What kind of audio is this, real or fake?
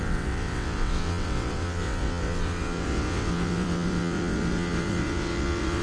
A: fake